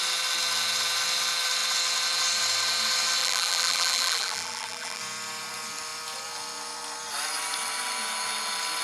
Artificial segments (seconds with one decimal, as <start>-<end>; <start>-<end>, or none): 3.2-5.0